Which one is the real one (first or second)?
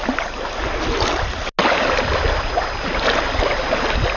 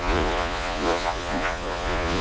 first